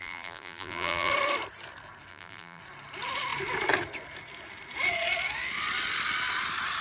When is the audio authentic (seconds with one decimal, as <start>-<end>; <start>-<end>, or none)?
1.1-2.1; 2.6-6.8